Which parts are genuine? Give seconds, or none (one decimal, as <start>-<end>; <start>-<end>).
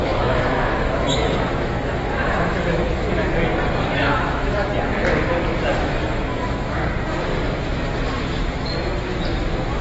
3.1-4.0; 4.7-5.7; 6.8-9.8